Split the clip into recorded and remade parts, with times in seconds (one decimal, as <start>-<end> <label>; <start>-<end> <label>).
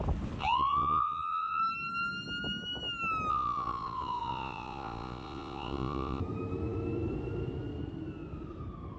0.0-0.4 recorded; 0.4-1.6 remade; 1.6-3.3 recorded; 3.3-6.2 remade; 6.2-9.0 recorded